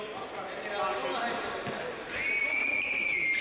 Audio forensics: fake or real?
real